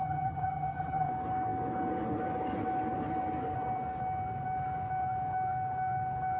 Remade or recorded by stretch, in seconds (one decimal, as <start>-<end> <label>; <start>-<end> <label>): 0.0-1.1 remade; 1.1-6.4 recorded